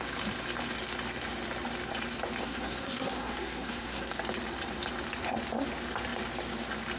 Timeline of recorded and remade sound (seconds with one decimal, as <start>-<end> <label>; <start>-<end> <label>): 0.0-2.4 recorded; 2.4-4.1 remade; 4.1-7.0 recorded